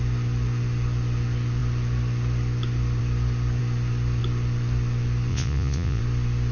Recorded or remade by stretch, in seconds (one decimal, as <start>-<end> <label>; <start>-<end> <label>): 0.0-5.3 recorded; 5.3-6.0 remade; 6.0-6.5 recorded